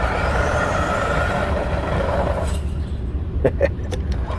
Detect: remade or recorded recorded